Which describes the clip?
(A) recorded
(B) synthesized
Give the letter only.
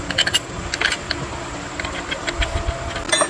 A